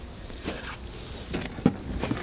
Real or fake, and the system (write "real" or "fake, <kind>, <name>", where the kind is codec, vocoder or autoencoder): real